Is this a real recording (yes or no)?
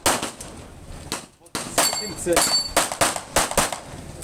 yes